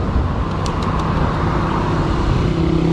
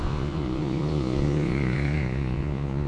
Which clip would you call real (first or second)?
first